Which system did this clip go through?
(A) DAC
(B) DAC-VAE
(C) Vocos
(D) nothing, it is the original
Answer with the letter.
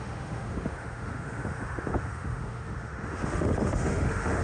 B